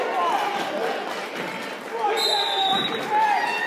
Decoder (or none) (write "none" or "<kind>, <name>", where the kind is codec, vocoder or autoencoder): none